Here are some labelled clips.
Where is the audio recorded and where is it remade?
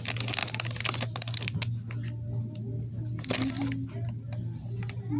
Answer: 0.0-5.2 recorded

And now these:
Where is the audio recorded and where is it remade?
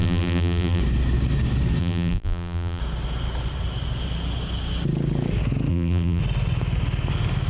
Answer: 0.0-0.8 remade; 0.8-1.8 recorded; 1.8-2.8 remade; 2.8-5.7 recorded; 5.7-6.2 remade; 6.2-7.5 recorded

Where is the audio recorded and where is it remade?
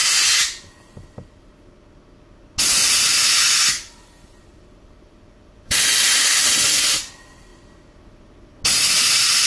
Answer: 0.0-4.6 recorded; 4.6-7.5 remade; 7.5-8.7 recorded; 8.7-9.5 remade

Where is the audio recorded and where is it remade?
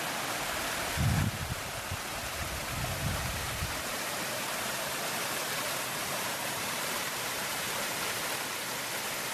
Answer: 0.0-6.0 recorded; 6.0-8.2 remade; 8.2-9.3 recorded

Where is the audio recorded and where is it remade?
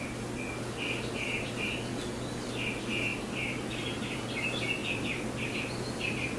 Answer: 0.0-3.1 recorded; 3.1-4.3 remade; 4.3-4.8 recorded; 4.8-6.4 remade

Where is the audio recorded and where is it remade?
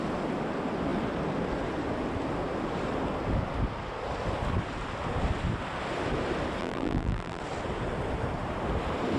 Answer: 0.0-6.6 recorded; 6.6-7.4 remade; 7.4-9.2 recorded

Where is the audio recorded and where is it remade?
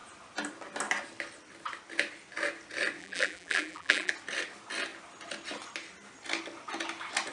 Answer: 0.0-3.0 recorded; 3.0-4.1 remade; 4.1-7.3 recorded